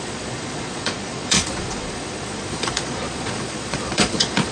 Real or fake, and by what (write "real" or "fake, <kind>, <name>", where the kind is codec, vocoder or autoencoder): fake, vocoder, Vocos